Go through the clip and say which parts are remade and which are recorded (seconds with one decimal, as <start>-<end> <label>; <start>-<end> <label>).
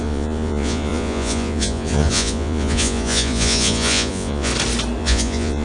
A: 0.0-4.5 remade; 4.5-5.0 recorded; 5.0-5.6 remade